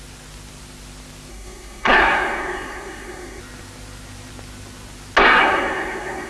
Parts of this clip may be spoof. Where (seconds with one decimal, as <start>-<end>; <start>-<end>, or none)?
1.3-3.4; 5.4-6.3